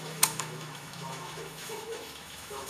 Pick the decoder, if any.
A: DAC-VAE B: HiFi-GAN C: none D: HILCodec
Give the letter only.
A